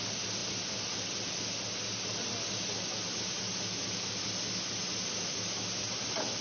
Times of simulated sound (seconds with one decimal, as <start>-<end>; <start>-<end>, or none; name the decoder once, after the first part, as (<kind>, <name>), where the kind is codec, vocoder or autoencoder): none

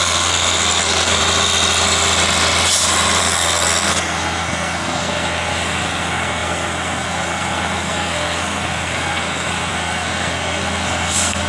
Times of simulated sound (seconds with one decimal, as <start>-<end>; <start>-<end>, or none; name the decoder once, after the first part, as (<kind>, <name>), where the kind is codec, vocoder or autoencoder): 0.0-1.2 (codec, SNAC); 3.2-11.5

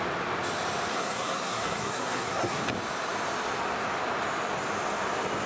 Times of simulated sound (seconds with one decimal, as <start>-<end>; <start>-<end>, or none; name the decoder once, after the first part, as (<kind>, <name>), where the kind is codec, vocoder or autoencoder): 0.9-2.6 (codec, SNAC)

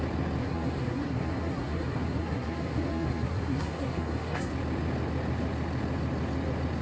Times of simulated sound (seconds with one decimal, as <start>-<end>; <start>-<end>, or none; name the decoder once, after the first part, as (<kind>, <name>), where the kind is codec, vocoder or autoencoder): 0.4-4.5 (codec, SNAC)

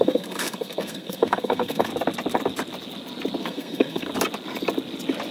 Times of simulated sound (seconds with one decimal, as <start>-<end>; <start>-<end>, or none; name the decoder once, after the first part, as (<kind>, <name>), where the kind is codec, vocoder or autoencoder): 0.0-1.9 (codec, SNAC); 3.4-4.1

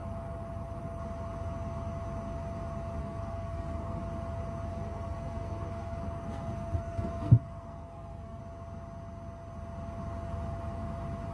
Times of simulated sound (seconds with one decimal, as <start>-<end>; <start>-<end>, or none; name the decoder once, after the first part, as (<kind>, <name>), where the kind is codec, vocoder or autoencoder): 3.0-4.0 (codec, SNAC); 4.7-8.4